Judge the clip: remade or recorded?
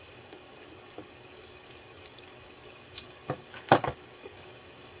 remade